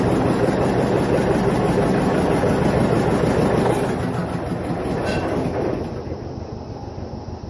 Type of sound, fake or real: real